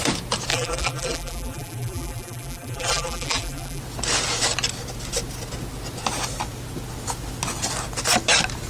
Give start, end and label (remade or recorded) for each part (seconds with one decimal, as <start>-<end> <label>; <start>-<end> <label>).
0.0-0.5 recorded; 0.5-3.8 remade; 3.8-8.7 recorded